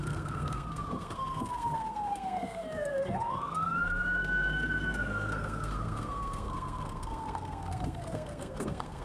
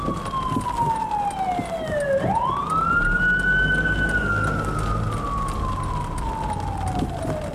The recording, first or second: second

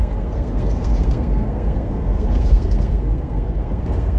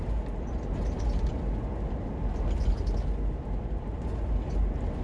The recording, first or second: second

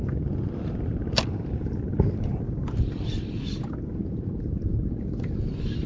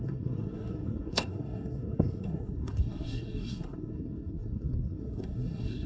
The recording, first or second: first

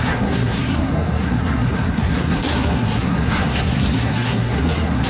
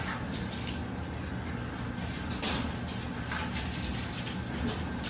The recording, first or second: second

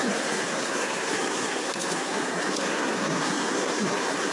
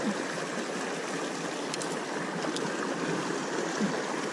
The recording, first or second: second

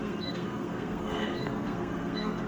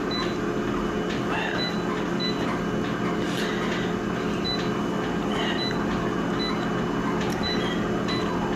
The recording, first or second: second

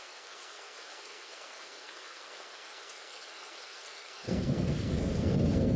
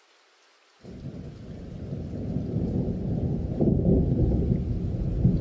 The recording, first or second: second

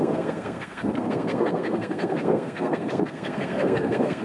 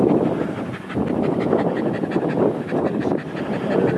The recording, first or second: second